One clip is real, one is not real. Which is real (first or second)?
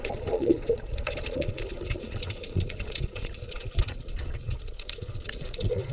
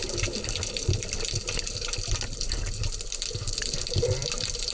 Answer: second